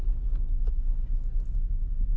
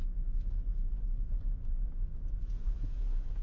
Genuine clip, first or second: first